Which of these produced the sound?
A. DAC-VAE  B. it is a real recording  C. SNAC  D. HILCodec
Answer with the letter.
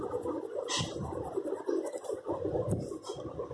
B